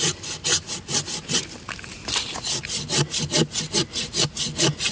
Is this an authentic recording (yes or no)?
yes